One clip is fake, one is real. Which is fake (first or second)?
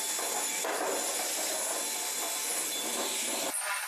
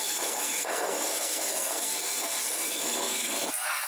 second